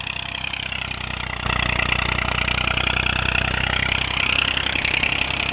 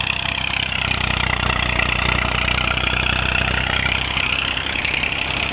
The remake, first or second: second